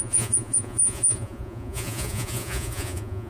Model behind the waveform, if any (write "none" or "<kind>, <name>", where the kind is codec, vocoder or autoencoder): vocoder, Vocos